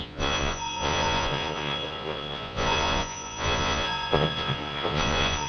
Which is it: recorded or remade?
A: remade